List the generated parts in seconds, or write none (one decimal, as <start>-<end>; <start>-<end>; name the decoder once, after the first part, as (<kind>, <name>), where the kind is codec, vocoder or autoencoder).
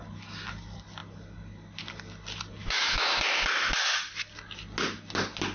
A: 2.6-3.2 (autoencoder, DAC-VAE)